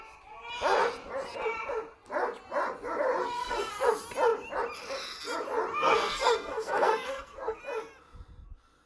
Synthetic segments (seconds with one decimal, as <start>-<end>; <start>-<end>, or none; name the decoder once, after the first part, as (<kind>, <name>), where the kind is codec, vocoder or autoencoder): 3.2-3.9 (codec, SNAC); 5.7-7.6